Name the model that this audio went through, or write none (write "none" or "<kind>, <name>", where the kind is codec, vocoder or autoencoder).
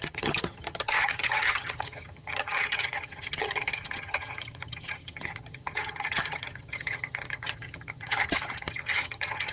vocoder, HiFi-GAN